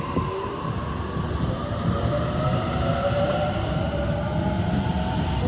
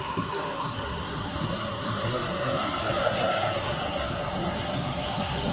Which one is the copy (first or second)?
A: second